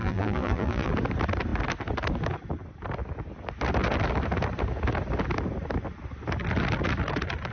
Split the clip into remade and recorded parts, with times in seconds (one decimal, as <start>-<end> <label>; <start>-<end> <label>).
0.0-0.9 remade; 0.9-7.5 recorded